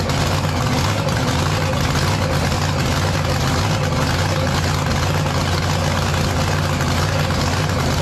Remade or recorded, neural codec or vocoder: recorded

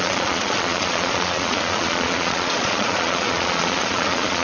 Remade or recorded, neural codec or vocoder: remade, vocoder, Vocos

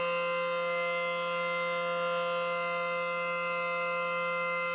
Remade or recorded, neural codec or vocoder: recorded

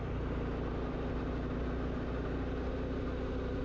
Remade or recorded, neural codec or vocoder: recorded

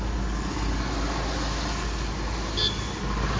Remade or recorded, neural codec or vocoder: recorded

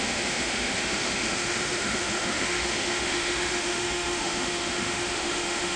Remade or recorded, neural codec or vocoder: remade, autoencoder, DAC-VAE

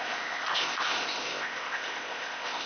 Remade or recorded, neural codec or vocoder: remade, codec, ZipCodec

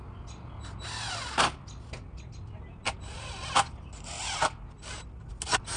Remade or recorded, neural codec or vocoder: recorded